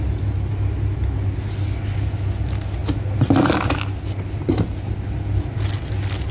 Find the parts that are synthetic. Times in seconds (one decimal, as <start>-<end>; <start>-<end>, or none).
none